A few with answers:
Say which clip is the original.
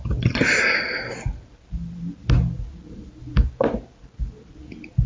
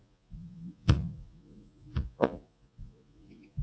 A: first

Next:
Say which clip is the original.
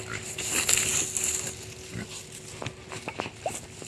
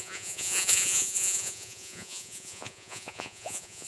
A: first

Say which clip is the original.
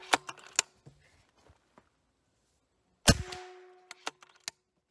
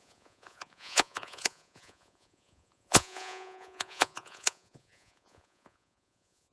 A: first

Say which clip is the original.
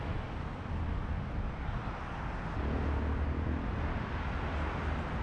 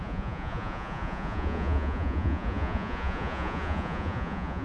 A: first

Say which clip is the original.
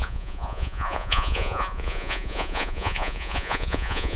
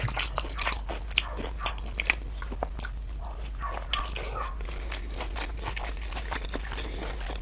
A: second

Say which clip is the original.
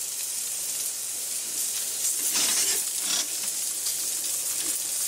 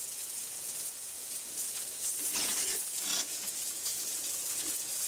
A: first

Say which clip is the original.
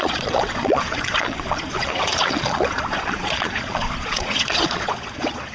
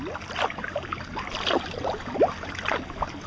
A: second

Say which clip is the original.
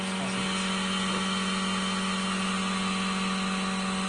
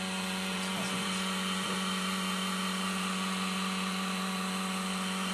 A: first